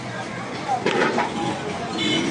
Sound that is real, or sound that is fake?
fake